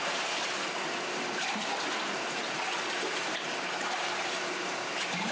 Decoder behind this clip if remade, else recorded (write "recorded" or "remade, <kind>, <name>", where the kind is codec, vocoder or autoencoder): remade, vocoder, BigVGAN v2